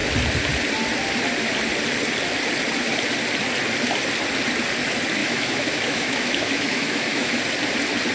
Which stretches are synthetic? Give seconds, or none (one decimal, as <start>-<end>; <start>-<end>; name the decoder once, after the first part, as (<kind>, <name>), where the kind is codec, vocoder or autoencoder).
5.2-7.4 (autoencoder, DAC-VAE)